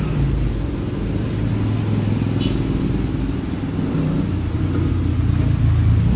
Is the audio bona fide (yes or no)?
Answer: yes